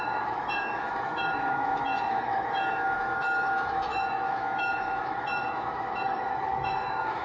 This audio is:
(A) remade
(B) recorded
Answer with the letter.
A